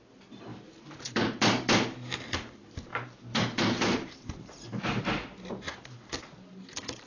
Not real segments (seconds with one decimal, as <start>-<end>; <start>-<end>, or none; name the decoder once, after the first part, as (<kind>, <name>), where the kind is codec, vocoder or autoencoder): 0.5-1.4 (vocoder, BigVGAN v2); 2.9-5.0